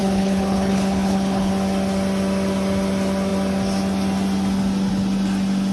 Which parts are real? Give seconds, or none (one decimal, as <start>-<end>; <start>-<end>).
1.5-5.7